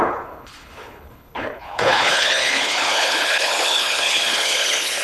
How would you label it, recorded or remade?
remade